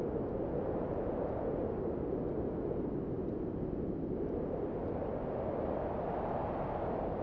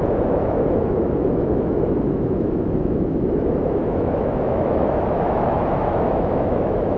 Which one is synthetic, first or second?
second